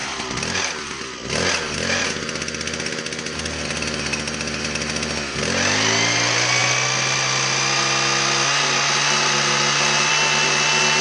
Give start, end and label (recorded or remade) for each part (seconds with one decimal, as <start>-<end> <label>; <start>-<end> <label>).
0.0-11.0 recorded